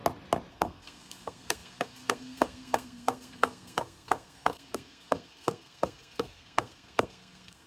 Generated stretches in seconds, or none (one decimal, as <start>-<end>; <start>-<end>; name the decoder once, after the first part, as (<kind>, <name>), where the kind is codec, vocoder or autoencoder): 0.5-7.7 (codec, SNAC)